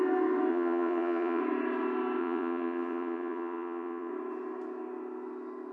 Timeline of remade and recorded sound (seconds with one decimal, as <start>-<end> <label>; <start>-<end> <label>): 0.0-0.5 recorded; 0.5-1.4 remade; 1.4-2.2 recorded; 2.2-4.1 remade; 4.1-5.7 recorded